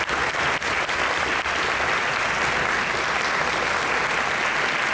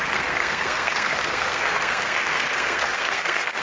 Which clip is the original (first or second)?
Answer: first